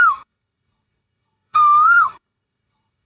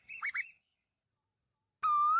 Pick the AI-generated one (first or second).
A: first